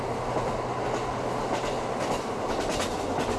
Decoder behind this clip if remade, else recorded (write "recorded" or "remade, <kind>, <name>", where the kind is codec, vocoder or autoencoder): recorded